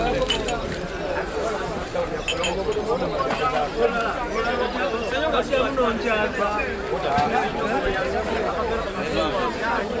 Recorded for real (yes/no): yes